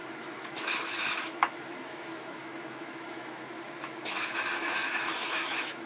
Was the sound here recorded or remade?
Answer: remade